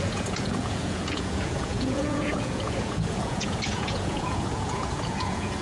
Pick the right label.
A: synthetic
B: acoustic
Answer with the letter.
A